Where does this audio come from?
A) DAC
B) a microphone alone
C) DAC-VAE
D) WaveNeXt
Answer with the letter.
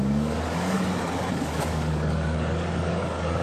A